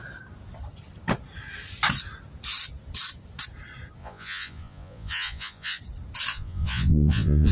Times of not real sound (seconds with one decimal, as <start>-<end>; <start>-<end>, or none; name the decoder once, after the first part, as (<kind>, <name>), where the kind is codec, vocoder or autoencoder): 4.0-5.8 (vocoder, Vocos); 6.3-7.5